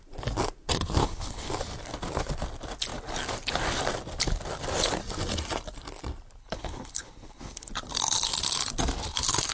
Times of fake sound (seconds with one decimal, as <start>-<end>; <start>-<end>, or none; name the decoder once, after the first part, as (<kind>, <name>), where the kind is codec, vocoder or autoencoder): 1.0-1.5 (codec, HILCodec); 6.4-7.7